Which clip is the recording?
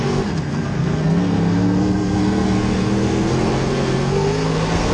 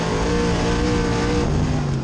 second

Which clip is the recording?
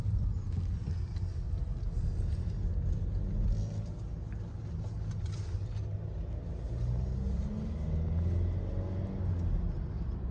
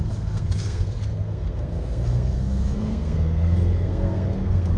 first